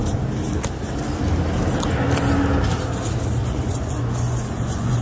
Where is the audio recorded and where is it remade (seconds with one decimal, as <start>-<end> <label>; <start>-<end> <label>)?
0.0-3.4 recorded; 3.4-5.0 remade